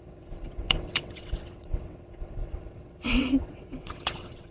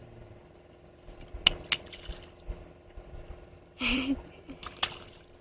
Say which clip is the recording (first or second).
second